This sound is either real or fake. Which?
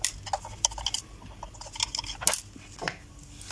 real